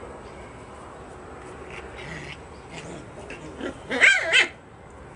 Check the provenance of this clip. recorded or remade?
recorded